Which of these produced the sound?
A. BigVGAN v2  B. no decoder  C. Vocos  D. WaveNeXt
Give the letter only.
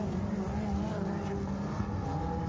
B